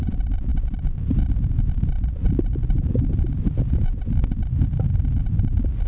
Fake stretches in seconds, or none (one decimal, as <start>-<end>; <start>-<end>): none